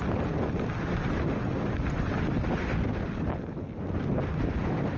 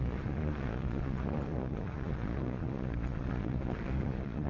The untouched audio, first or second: first